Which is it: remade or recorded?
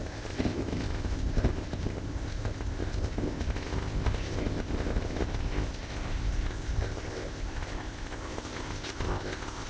remade